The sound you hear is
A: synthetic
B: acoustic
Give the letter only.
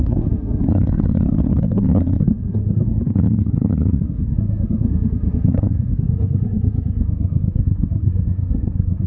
A